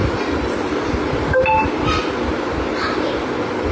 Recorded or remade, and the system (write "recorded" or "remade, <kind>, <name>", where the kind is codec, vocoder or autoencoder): recorded